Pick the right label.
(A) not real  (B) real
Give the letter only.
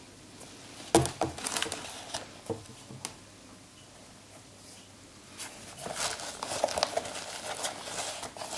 B